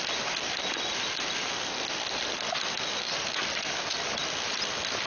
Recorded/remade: recorded